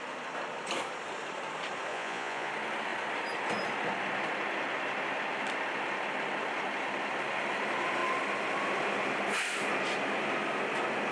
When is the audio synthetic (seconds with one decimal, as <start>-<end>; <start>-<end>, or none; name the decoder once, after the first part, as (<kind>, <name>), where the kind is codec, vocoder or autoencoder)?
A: 1.9-2.5 (vocoder, Vocos)